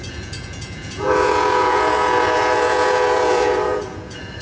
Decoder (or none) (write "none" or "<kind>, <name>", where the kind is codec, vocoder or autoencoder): vocoder, Vocos